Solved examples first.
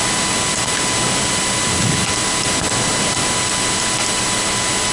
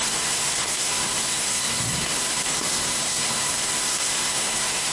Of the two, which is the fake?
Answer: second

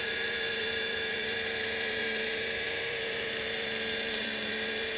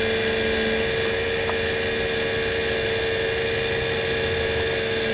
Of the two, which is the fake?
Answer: first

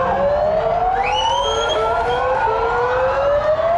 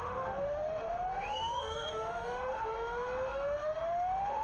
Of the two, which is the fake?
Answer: second